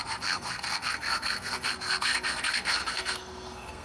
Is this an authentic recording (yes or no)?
no